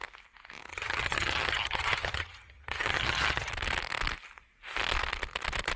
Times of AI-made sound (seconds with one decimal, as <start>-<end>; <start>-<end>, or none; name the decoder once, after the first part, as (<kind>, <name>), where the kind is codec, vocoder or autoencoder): 0.7-3.5 (vocoder, HiFi-GAN)